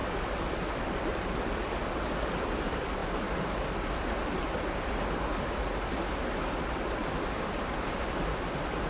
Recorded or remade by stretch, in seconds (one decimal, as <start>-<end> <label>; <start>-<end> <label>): 0.0-8.9 remade